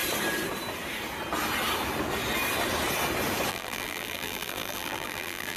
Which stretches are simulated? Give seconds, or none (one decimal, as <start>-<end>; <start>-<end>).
3.5-5.6